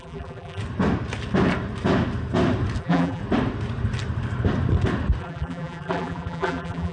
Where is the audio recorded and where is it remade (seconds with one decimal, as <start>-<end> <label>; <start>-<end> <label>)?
0.0-0.6 remade; 0.6-2.8 recorded; 2.8-3.2 remade; 3.2-5.2 recorded; 5.2-6.9 remade